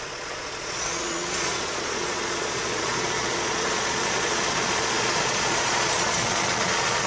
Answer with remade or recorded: remade